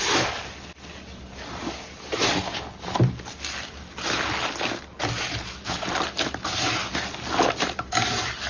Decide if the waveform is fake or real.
real